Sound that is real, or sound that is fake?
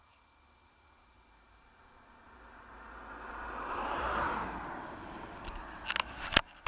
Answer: real